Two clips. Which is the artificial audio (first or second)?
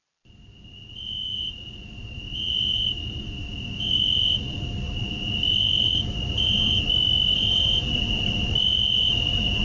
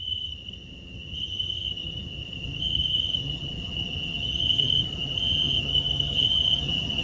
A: second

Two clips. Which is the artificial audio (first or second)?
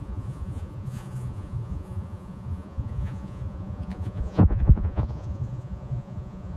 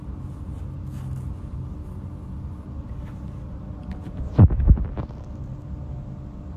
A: first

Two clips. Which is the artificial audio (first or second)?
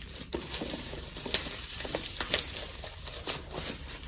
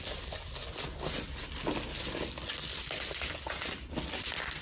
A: first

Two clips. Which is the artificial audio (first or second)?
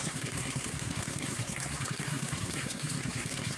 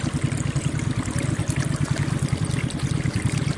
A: first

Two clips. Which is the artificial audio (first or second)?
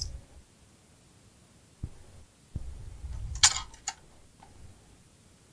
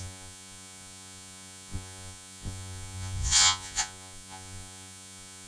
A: second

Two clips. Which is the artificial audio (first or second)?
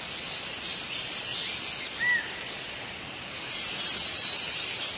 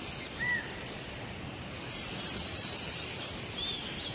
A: second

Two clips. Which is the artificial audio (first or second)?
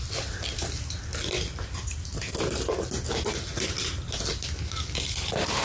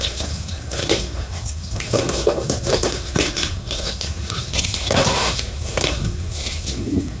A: second